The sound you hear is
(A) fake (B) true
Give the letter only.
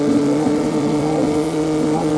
A